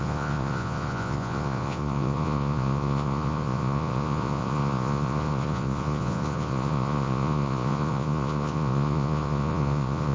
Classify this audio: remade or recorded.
remade